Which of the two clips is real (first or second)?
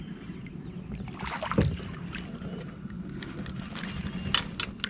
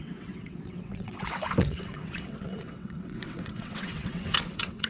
first